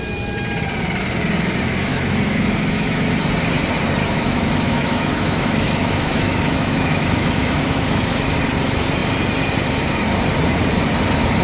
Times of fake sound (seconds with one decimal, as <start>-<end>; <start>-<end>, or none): 1.9-3.1; 4.0-8.4